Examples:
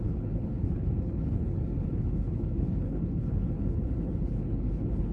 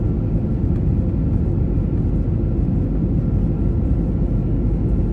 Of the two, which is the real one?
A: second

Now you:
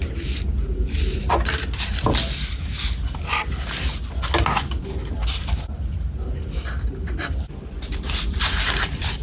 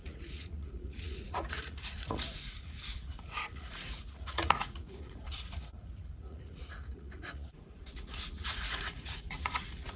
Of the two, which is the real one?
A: first